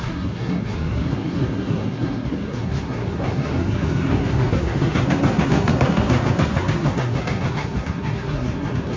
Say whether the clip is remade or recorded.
remade